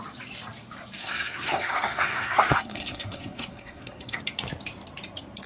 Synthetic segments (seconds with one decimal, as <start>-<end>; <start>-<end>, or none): 1.0-4.2